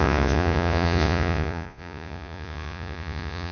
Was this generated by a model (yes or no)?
yes